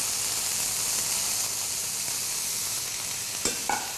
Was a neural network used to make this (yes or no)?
no